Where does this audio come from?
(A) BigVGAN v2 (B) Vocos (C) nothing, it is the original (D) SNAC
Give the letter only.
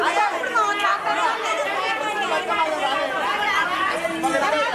C